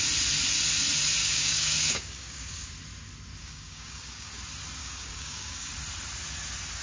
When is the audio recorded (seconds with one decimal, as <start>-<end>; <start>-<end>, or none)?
0.0-1.2; 2.7-3.4; 4.3-4.8; 5.7-6.8